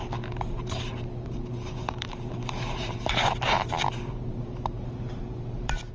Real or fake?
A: fake